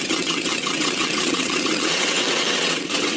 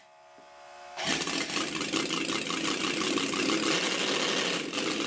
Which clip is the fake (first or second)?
first